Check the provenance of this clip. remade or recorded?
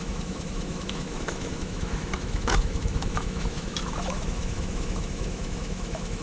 remade